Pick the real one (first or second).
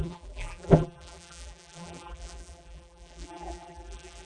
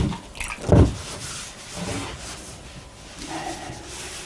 second